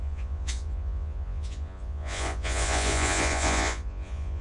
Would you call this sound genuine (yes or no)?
no